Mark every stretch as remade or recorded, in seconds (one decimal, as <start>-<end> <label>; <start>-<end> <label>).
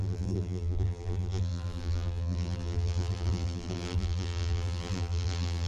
0.0-5.7 remade